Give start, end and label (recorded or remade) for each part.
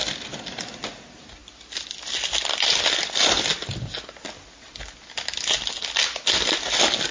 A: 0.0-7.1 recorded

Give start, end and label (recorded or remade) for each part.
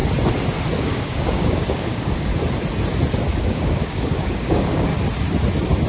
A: 0.0-0.8 recorded; 0.8-2.3 remade; 2.3-3.4 recorded; 3.4-4.9 remade; 4.9-5.9 recorded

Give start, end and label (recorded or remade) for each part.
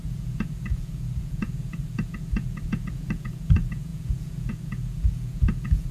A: 0.0-5.9 remade